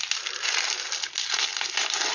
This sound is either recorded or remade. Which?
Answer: recorded